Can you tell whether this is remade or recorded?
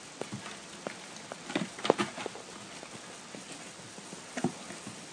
recorded